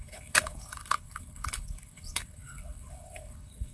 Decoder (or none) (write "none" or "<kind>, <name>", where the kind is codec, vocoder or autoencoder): codec, HILCodec